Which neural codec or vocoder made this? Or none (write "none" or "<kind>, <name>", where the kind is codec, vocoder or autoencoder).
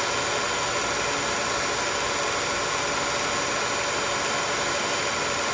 none